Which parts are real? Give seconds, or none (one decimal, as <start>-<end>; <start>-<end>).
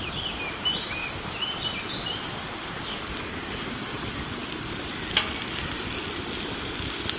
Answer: 0.0-7.2